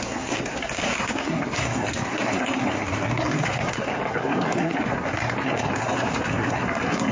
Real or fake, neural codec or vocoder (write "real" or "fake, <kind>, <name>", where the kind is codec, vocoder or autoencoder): fake, codec, SNAC